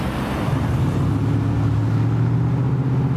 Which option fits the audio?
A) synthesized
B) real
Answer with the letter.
B